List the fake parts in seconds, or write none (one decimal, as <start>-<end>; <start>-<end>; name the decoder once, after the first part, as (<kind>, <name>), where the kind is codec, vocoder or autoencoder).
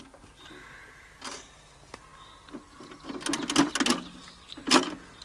none